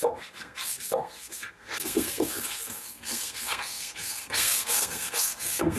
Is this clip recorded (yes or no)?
no